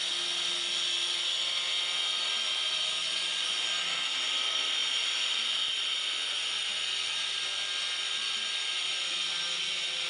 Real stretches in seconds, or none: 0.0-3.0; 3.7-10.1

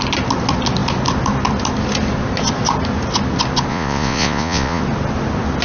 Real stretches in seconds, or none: 0.0-3.7; 4.8-5.6

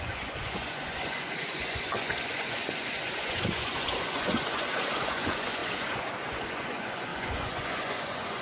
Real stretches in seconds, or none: none

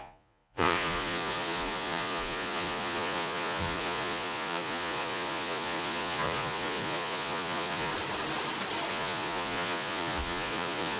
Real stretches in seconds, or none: 7.9-8.9

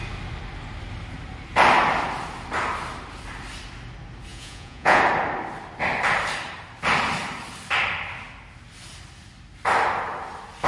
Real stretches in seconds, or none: 0.0-4.3; 5.0-10.7